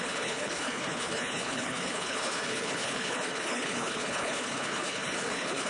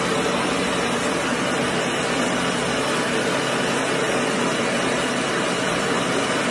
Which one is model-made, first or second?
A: first